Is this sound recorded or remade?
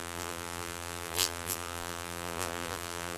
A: remade